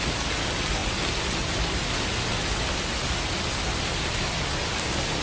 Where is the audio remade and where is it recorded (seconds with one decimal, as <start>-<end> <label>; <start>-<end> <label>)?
0.0-5.2 recorded